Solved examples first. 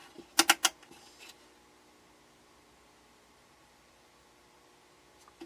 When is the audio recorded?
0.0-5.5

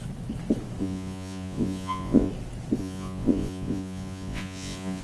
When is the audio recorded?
0.0-0.8; 2.3-2.8

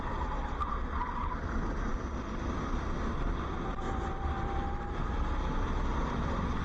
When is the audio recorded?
0.0-6.6

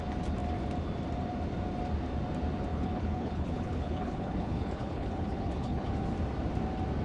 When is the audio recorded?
0.0-2.7; 5.9-7.0

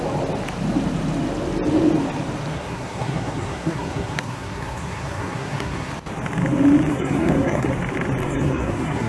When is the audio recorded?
0.0-2.5; 5.9-6.9; 7.7-8.2

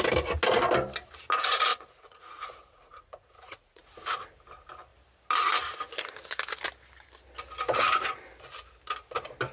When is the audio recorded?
0.0-1.7; 3.8-9.5

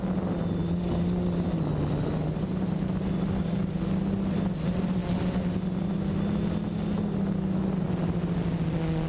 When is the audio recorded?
0.0-9.1

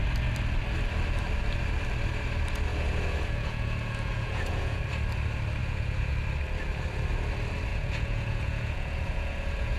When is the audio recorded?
0.0-2.7; 4.8-5.6; 6.1-7.7